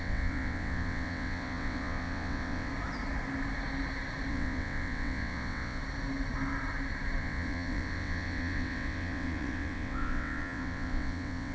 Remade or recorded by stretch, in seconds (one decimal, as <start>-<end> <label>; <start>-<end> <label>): 0.0-2.7 remade; 2.7-4.3 recorded; 4.3-5.8 remade; 5.8-7.2 recorded; 7.2-11.5 remade